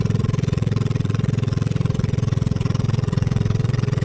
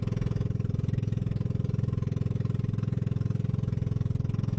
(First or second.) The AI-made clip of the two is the first